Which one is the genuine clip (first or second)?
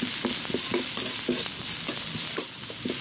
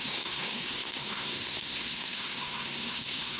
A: first